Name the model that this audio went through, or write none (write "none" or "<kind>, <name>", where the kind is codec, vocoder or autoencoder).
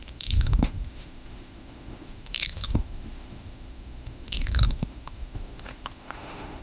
autoencoder, DAC-VAE